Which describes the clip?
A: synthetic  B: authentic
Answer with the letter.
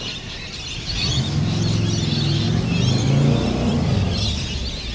B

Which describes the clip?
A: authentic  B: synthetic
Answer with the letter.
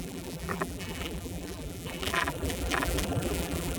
B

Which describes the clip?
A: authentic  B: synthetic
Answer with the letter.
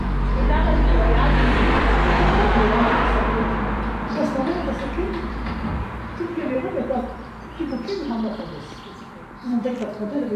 B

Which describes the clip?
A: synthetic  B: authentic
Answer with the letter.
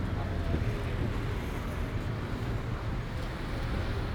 B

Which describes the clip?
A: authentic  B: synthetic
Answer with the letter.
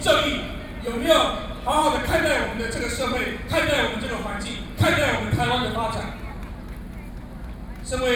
B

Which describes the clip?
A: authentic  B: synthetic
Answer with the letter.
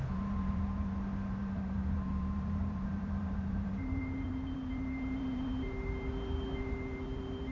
B